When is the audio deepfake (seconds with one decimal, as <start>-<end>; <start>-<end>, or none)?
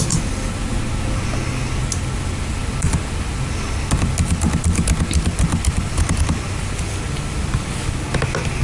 none